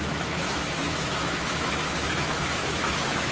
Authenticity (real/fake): fake